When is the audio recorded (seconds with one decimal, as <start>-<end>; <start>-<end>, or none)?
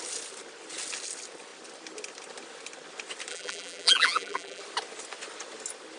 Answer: 0.0-3.3; 4.6-6.0